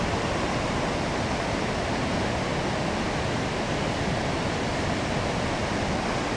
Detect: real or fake real